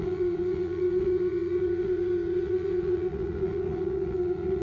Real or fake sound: fake